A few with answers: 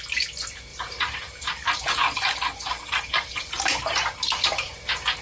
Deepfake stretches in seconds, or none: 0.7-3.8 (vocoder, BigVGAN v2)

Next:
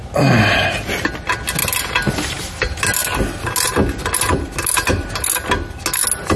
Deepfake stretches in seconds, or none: none

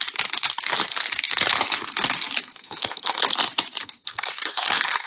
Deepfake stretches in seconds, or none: 2.4-3.2 (codec, SNAC); 3.8-5.1